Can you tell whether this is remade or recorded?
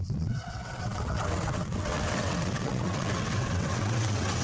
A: remade